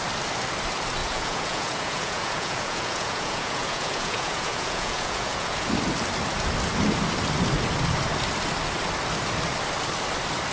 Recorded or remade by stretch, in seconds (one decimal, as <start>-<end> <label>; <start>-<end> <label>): 0.0-1.0 recorded; 1.0-5.7 remade; 5.7-10.5 recorded